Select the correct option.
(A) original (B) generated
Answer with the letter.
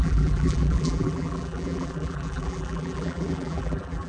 B